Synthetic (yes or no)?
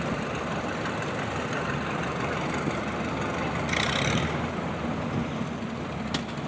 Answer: no